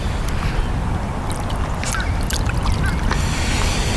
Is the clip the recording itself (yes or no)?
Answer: yes